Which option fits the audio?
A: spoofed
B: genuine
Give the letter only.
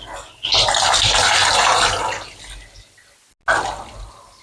B